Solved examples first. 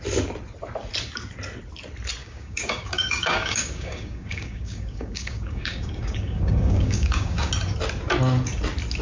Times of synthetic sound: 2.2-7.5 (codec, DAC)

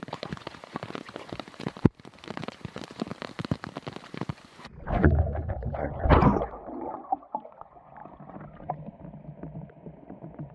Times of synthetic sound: 0.0-3.1 (vocoder, Vocos); 4.1-8.0; 9.6-10.5

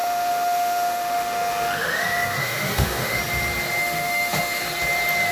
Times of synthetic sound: 0.0-3.2 (autoencoder, DAC-VAE); 3.8-4.6

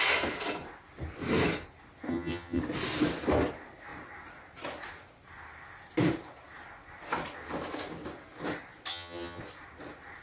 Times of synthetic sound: 2.1-2.6 (vocoder, HiFi-GAN); 8.9-9.4

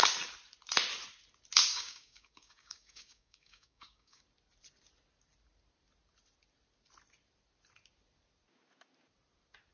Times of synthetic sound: 1.7-4.2 (codec, DAC)

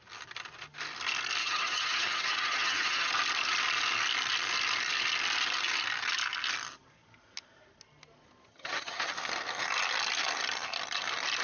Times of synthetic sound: 1.4-3.1 (vocoder, HiFi-GAN); 8.5-9.1

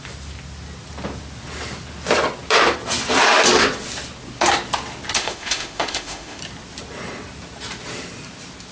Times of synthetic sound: 5.2-6.4 (autoencoder, DAC-VAE)